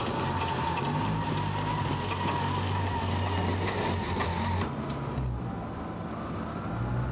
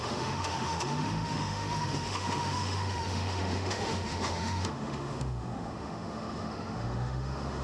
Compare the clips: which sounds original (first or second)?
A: first